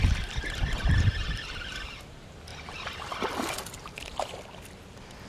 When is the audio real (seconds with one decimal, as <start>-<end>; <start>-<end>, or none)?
0.0-5.3